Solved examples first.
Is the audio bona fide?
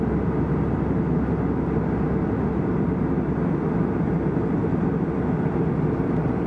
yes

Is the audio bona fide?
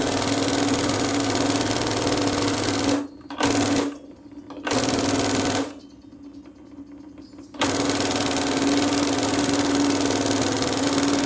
yes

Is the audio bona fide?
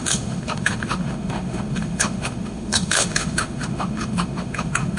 no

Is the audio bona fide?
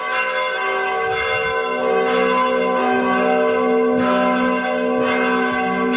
yes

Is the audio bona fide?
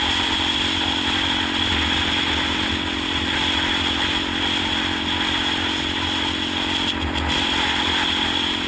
yes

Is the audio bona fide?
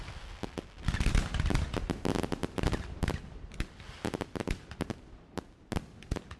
yes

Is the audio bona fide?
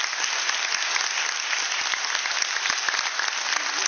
yes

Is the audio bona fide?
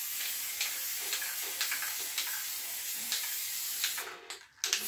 yes